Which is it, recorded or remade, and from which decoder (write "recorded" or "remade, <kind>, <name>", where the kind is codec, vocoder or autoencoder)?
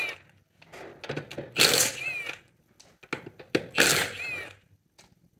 recorded